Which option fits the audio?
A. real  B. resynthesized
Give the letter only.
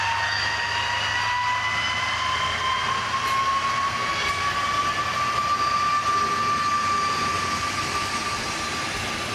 A